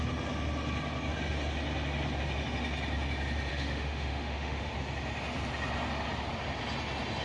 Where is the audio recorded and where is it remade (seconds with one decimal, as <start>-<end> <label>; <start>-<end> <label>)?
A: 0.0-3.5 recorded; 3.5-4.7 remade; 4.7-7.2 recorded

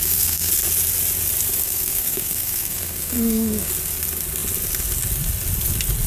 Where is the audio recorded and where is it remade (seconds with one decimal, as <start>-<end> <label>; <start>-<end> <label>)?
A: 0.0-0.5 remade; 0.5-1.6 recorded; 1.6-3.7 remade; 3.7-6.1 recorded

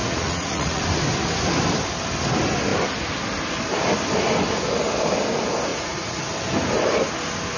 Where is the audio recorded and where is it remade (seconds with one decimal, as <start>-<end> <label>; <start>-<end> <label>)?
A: 0.0-0.8 remade; 0.8-5.7 recorded; 5.7-6.2 remade; 6.2-7.6 recorded